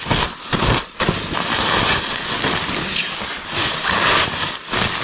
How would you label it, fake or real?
real